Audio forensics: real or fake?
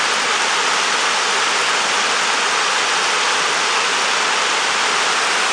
real